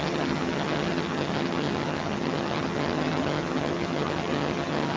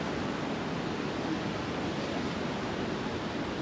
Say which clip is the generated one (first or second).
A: first